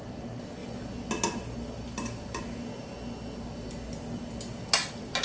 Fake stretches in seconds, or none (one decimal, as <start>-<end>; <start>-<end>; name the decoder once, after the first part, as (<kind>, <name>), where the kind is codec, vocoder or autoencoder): none